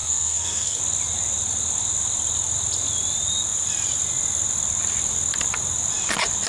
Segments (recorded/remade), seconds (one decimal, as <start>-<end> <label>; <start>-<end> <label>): 0.0-0.8 remade; 0.8-6.5 recorded